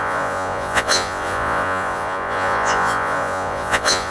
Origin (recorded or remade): remade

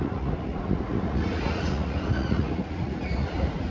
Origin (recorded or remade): remade